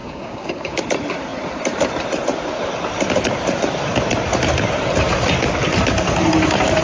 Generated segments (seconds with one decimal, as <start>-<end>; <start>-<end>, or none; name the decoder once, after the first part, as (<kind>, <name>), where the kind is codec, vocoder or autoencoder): 0.0-0.8 (codec, DAC)